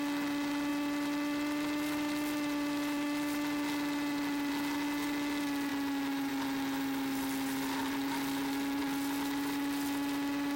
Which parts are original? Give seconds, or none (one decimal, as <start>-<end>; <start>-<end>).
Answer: 0.0-0.7; 4.5-7.8; 8.8-10.6